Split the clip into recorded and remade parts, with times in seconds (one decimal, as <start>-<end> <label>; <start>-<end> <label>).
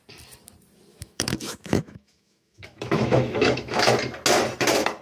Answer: 0.0-0.9 recorded; 0.9-3.9 remade; 3.9-5.0 recorded